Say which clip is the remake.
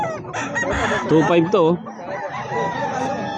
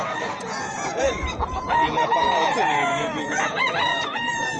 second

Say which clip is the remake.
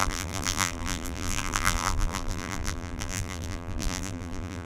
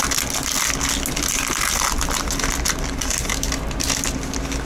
first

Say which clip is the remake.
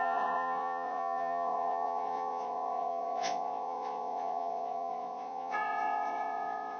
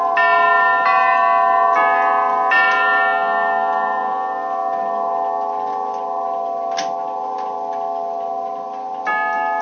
first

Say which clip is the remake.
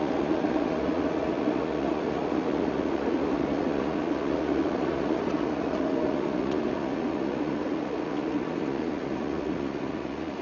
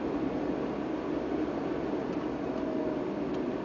first